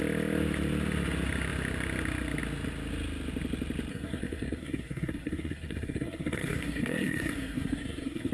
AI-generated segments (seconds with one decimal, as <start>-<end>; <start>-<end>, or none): 3.9-8.3